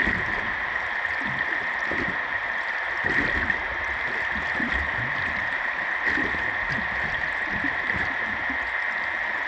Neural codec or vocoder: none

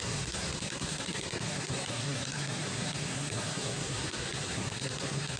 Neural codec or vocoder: codec, SNAC